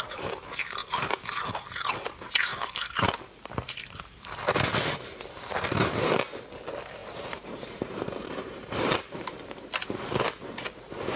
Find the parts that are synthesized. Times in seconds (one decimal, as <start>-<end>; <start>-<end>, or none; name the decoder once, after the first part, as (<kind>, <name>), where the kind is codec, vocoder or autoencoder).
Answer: 7.0-9.7 (vocoder, BigVGAN v2)